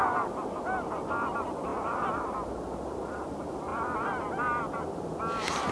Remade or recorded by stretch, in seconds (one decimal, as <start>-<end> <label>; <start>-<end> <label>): 0.0-5.7 recorded